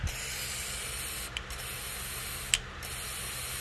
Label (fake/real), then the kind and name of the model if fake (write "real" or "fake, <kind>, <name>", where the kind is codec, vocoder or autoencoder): real